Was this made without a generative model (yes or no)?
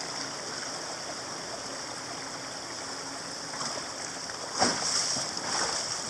yes